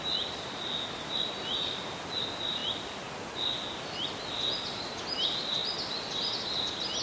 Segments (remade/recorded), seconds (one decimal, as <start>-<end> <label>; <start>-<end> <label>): 0.0-7.0 recorded